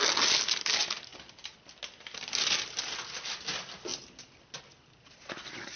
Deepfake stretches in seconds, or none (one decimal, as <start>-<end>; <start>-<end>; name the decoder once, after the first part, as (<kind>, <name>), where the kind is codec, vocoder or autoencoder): none